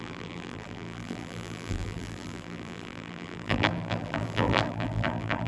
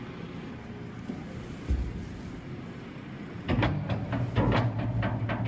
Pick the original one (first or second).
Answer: second